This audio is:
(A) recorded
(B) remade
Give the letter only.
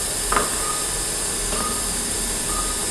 A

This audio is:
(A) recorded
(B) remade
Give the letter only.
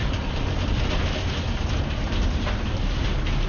A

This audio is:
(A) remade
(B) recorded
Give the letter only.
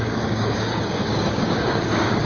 A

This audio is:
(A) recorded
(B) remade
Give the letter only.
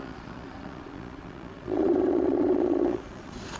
B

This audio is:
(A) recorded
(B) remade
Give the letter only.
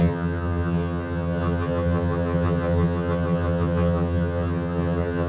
B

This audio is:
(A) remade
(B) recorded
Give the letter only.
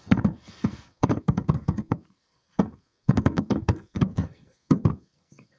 A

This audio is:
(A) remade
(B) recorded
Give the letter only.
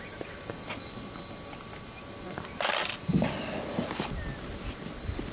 B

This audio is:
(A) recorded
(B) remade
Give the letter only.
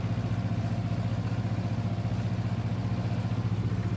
A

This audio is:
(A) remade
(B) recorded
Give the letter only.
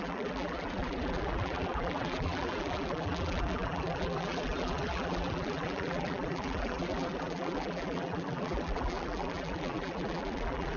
A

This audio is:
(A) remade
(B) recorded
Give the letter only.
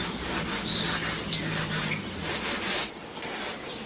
B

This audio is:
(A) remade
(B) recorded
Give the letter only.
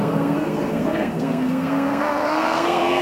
A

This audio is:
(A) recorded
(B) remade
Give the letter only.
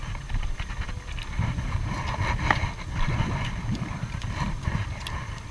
B